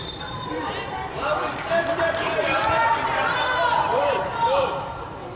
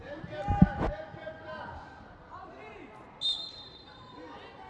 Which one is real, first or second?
second